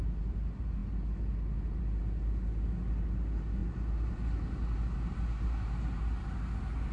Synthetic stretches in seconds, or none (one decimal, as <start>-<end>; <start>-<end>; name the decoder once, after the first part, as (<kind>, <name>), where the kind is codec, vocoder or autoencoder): none